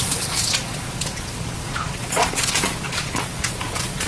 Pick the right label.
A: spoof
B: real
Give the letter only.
A